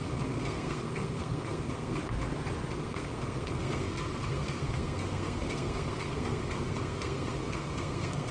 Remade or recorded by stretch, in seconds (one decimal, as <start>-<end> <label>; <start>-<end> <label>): 0.0-2.0 remade; 2.0-2.7 recorded; 2.7-8.3 remade

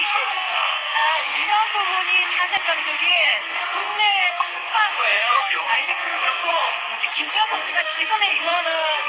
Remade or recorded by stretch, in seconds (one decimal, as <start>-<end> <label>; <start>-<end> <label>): 0.0-1.5 remade; 1.5-3.1 recorded; 3.1-9.1 remade

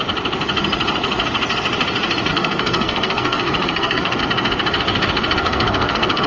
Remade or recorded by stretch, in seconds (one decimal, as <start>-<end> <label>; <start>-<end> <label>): 0.0-2.3 recorded; 2.3-4.2 remade; 4.2-5.4 recorded; 5.4-6.3 remade